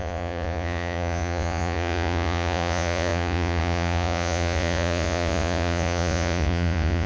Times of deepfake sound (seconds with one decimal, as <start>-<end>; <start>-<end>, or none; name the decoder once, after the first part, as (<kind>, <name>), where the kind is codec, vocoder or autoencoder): 0.0-7.1 (vocoder, Vocos)